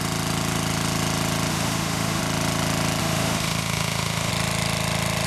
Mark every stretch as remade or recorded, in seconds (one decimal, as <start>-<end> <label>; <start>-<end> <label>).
0.0-1.5 recorded; 1.5-2.2 remade; 2.2-3.0 recorded; 3.0-4.3 remade; 4.3-5.3 recorded